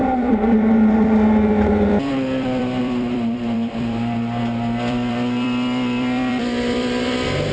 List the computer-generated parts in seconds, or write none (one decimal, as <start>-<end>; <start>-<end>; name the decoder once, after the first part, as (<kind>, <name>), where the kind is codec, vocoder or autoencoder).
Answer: 0.0-7.5 (vocoder, BigVGAN v2)